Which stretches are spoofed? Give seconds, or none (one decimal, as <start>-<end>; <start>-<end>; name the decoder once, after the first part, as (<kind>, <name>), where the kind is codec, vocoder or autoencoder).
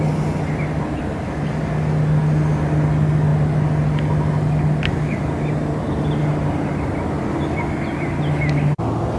none